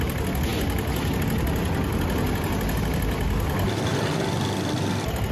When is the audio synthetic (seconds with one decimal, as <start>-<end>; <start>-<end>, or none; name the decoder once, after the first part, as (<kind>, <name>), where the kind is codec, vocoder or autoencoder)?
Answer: none